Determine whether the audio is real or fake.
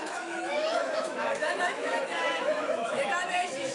fake